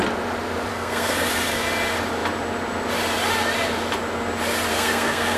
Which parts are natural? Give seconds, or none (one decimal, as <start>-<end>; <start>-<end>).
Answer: 0.0-0.7; 1.3-4.7